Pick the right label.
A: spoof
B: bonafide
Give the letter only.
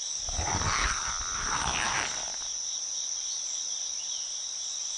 B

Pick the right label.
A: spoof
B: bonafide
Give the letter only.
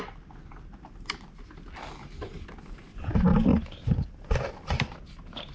B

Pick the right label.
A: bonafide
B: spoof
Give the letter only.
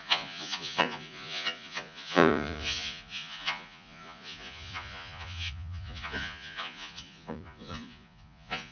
B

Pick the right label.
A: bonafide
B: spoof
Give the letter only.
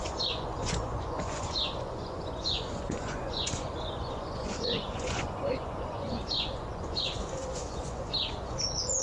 B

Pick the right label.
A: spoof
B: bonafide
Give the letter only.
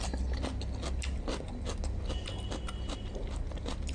B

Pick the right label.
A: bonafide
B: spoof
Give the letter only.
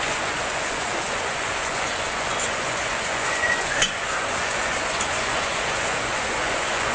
B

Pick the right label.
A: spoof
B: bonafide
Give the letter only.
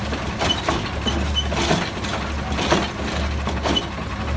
B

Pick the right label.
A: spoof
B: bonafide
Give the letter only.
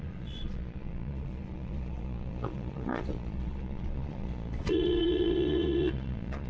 A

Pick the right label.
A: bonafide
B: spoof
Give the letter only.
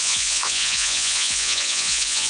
B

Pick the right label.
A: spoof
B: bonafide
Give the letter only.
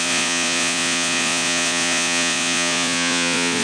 A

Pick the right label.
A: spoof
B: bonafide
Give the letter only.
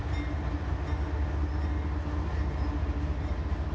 B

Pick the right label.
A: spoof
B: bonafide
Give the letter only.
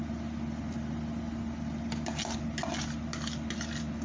B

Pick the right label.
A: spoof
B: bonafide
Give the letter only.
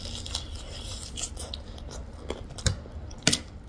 B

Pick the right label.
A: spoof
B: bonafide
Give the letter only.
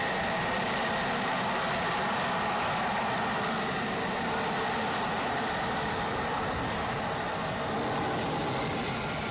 B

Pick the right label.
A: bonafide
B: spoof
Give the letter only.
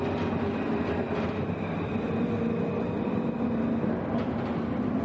A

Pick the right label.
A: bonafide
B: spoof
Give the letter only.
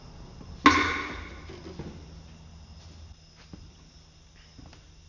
A